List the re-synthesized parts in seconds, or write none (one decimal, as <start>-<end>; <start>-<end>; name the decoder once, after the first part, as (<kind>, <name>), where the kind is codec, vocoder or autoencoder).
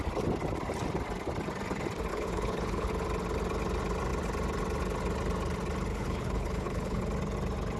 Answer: 2.1-2.9 (codec, HILCodec); 5.9-7.0